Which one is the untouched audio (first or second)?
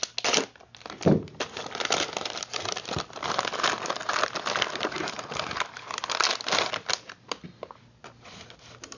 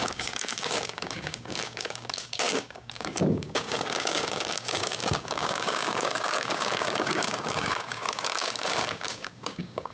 first